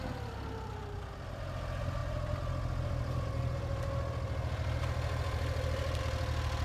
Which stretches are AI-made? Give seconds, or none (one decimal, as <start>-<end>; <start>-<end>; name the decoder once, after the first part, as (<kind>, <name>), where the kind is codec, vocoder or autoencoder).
none